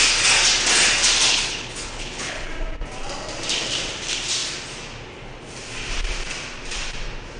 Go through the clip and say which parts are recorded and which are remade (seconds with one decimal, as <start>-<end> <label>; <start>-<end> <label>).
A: 0.0-1.3 recorded; 1.3-2.5 remade; 2.5-7.4 recorded